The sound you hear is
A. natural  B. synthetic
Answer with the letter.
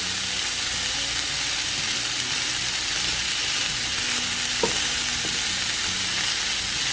A